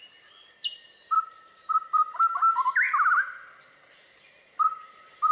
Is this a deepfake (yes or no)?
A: no